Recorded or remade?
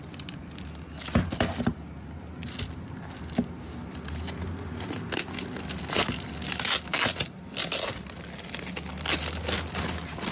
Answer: recorded